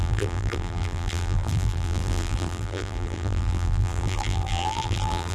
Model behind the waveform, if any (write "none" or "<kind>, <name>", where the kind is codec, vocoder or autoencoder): vocoder, BigVGAN v2